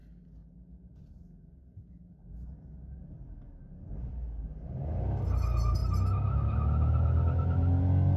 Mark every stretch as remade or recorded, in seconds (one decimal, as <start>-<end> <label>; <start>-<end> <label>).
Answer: 0.0-8.2 recorded